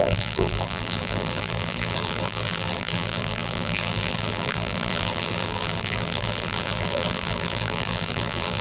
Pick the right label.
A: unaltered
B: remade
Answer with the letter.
B